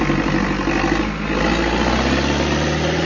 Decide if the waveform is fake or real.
real